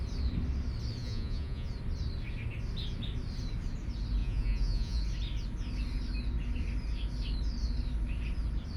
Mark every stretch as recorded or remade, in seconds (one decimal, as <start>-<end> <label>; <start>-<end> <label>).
0.0-1.0 recorded; 1.0-1.7 remade; 1.7-4.2 recorded; 4.2-5.0 remade; 5.0-8.8 recorded